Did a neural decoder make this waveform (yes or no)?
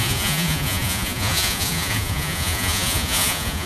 yes